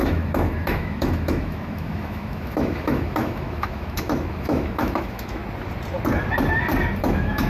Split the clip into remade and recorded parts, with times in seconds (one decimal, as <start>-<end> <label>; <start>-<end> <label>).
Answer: 0.0-5.4 remade; 5.4-7.0 recorded; 7.0-7.5 remade